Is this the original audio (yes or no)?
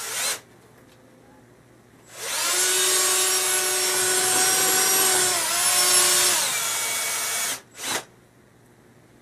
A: yes